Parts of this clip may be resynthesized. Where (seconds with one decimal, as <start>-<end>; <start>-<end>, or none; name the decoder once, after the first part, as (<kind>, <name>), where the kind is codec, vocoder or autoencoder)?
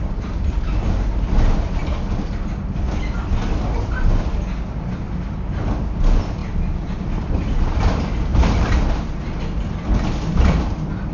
none